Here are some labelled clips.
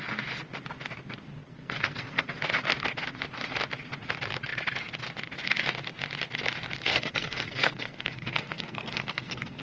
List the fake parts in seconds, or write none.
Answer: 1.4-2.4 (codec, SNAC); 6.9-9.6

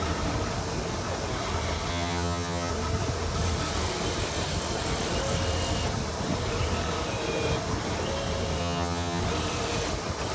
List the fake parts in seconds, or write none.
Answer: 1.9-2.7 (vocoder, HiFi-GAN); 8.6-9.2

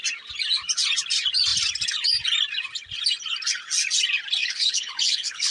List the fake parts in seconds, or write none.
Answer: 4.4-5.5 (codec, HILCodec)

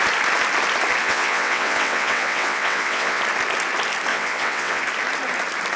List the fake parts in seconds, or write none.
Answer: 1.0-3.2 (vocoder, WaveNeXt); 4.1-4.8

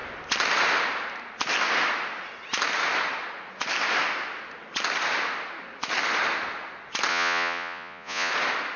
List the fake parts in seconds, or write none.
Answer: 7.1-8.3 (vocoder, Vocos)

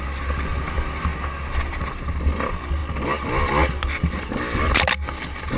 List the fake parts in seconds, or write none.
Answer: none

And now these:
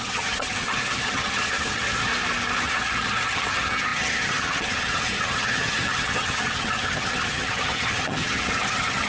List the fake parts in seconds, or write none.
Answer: 0.0-2.1 (vocoder, HiFi-GAN); 2.6-9.1

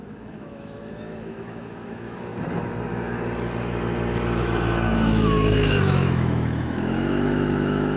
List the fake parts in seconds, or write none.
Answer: 0.0-2.3 (autoencoder, DAC-VAE); 4.4-8.0